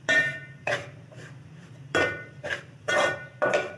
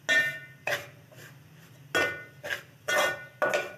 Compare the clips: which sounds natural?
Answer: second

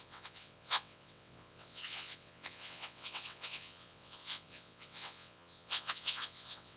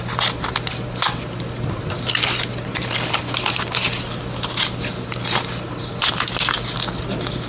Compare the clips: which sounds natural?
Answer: second